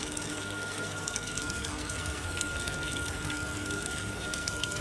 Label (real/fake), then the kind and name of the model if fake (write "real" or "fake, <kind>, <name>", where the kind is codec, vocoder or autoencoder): fake, codec, SNAC